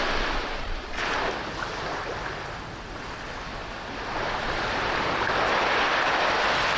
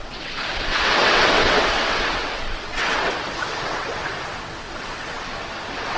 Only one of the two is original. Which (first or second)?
first